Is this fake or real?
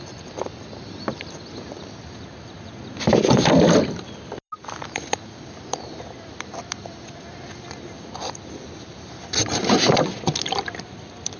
real